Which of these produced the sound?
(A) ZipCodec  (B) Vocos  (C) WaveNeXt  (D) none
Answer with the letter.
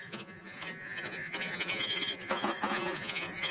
B